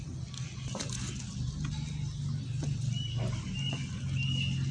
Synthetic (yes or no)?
no